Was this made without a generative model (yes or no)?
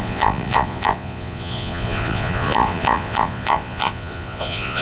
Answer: no